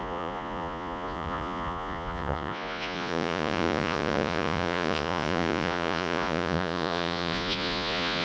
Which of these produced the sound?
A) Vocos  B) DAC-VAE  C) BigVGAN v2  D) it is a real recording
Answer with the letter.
A